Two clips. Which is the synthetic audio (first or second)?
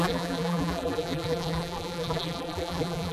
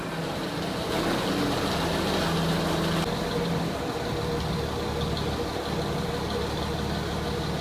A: first